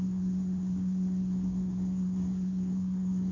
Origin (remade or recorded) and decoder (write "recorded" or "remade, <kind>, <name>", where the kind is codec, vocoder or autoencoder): remade, codec, SNAC